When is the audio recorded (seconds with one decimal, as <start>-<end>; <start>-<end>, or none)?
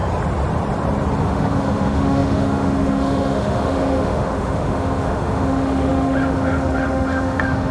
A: 0.0-1.2